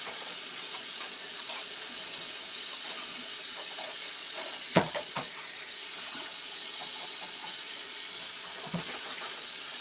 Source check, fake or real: fake